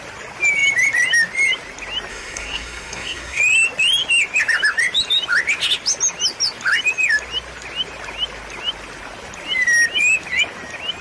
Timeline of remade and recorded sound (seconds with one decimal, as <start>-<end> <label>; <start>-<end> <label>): 0.0-2.1 recorded; 2.1-3.4 remade; 3.4-11.0 recorded